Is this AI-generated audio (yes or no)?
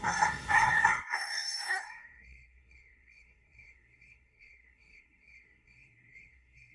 yes